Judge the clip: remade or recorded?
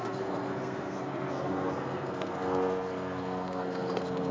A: remade